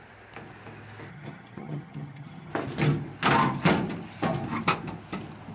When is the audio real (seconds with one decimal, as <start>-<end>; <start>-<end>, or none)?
0.0-1.1; 2.5-5.5